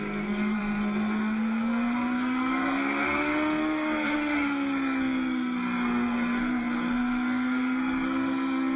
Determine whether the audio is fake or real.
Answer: fake